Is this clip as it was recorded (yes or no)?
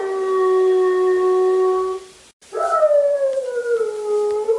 yes